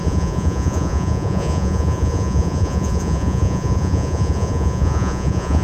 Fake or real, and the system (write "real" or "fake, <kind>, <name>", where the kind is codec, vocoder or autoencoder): fake, vocoder, Vocos